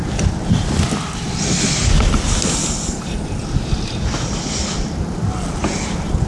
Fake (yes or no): no